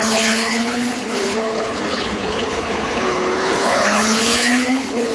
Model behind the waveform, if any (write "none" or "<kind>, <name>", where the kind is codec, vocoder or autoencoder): codec, HILCodec